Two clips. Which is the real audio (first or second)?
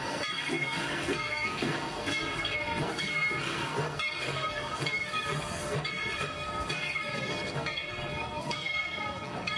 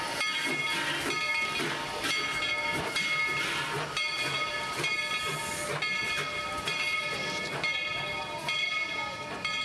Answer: second